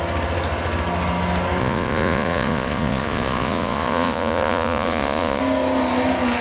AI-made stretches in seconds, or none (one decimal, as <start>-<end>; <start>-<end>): 1.6-5.4